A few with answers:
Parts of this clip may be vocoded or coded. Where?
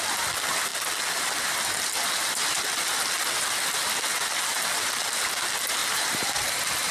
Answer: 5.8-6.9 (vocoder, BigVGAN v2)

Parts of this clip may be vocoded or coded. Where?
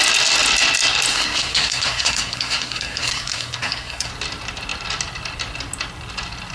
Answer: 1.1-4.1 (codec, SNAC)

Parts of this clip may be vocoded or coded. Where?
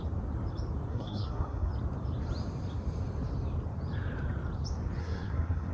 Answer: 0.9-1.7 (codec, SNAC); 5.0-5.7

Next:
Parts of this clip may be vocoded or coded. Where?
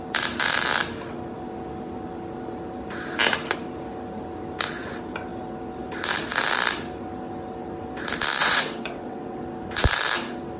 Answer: 8.4-9.4 (vocoder, WaveNeXt)